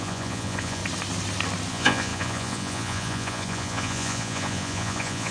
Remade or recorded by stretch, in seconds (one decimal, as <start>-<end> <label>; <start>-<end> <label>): 0.0-0.8 remade; 0.8-1.7 recorded; 1.7-5.3 remade